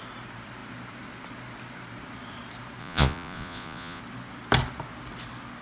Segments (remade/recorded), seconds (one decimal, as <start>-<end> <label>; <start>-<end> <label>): 0.0-2.8 recorded; 2.8-4.0 remade; 4.0-5.6 recorded